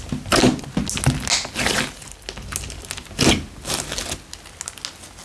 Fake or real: real